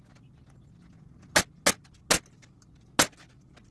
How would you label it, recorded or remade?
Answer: recorded